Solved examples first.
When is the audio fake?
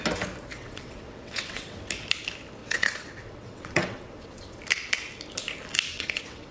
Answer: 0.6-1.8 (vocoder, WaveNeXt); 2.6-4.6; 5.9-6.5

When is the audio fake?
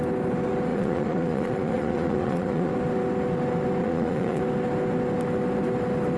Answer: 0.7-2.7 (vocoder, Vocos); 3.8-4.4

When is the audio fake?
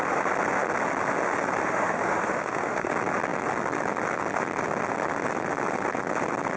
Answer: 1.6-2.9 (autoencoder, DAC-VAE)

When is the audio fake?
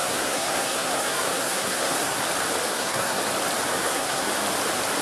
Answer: 0.0-2.2 (codec, SNAC); 2.7-3.2; 3.7-4.3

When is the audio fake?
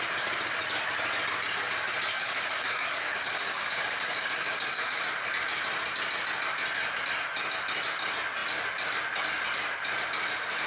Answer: 2.1-5.0 (codec, DAC)